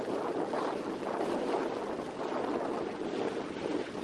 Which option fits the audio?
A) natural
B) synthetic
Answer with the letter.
A